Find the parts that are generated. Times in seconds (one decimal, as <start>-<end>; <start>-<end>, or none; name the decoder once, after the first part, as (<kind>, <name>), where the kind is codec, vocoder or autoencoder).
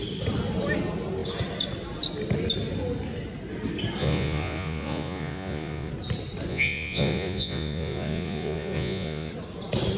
4.0-5.9 (vocoder, Vocos); 6.5-9.3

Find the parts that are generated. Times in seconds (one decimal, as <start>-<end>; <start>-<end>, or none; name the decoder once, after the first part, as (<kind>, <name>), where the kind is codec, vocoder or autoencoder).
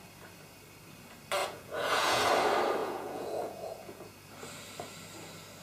1.4-2.3 (vocoder, Vocos); 2.8-4.1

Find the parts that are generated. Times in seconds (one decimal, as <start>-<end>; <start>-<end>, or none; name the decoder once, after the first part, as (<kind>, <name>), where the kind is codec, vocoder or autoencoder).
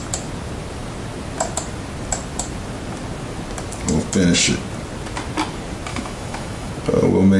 5.9-6.7 (autoencoder, DAC-VAE)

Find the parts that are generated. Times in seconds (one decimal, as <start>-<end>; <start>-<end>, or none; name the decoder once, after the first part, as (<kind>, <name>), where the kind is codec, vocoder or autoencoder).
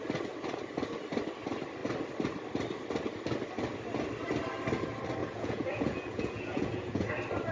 5.2-7.1 (vocoder, Vocos)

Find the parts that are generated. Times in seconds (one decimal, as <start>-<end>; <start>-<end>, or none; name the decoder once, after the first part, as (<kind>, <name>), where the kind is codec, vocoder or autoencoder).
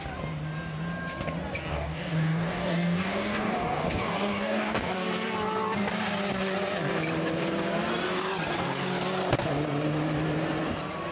1.7-5.1 (codec, DAC)